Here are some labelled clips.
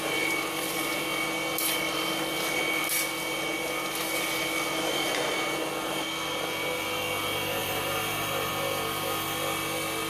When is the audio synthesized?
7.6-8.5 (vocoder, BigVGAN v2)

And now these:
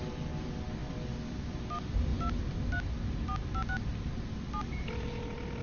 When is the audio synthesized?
none

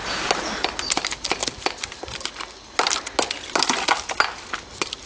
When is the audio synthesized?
none

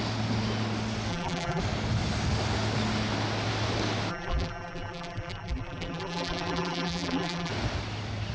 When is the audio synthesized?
1.1-1.6 (vocoder, BigVGAN v2); 4.1-7.5

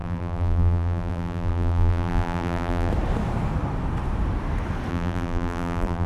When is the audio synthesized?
0.0-2.9 (vocoder, BigVGAN v2); 4.9-6.1

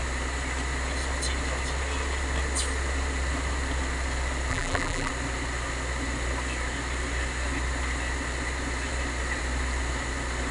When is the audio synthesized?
4.5-5.1 (vocoder, BigVGAN v2)

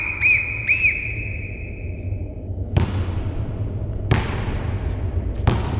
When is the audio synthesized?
2.3-5.8 (vocoder, BigVGAN v2)

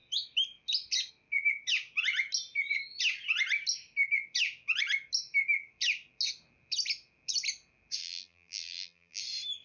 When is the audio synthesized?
8.0-9.2 (vocoder, BigVGAN v2)